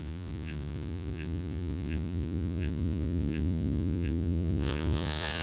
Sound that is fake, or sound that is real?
fake